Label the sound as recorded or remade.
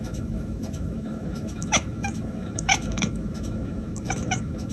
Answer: remade